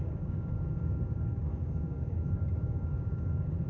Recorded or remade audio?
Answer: remade